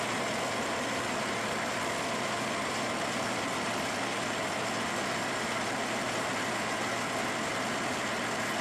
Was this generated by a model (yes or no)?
no